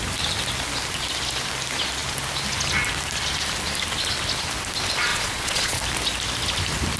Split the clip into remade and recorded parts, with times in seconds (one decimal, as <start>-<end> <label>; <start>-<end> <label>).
0.0-5.1 recorded; 5.1-5.8 remade; 5.8-7.0 recorded

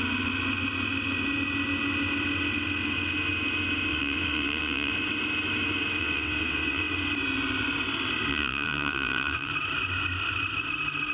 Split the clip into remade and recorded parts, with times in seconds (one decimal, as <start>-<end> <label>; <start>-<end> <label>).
0.0-3.9 recorded; 3.9-4.9 remade; 4.9-6.0 recorded; 6.0-6.9 remade; 6.9-8.3 recorded; 8.3-9.5 remade; 9.5-11.1 recorded

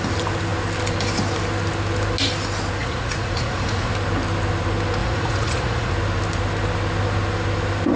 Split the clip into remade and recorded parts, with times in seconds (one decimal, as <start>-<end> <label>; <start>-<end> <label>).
0.0-2.8 recorded; 2.8-3.9 remade; 3.9-5.0 recorded; 5.0-5.9 remade; 5.9-8.0 recorded

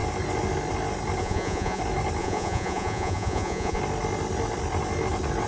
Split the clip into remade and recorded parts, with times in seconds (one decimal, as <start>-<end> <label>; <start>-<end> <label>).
0.0-1.2 recorded; 1.2-1.8 remade; 1.8-2.2 recorded; 2.2-3.8 remade; 3.8-5.5 recorded